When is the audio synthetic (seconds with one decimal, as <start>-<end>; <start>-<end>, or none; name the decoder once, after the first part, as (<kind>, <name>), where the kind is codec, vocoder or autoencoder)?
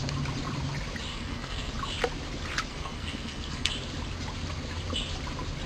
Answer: 1.1-1.7 (codec, SNAC); 2.7-3.7